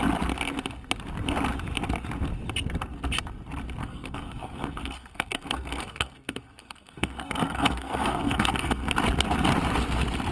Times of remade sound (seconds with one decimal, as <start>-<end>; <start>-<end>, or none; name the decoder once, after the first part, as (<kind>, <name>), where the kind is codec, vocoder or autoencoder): 3.8-8.9 (codec, SNAC)